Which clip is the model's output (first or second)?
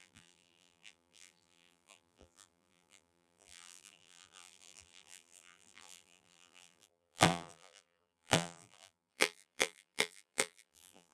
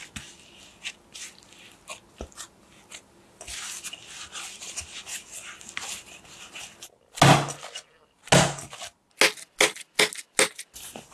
first